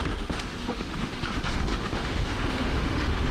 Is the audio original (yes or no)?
no